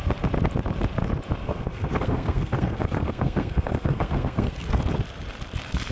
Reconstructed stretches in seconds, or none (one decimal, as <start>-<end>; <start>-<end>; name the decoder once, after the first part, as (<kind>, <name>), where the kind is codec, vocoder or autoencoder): 1.4-4.8 (codec, SNAC)